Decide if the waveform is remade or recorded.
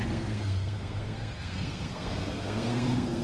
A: remade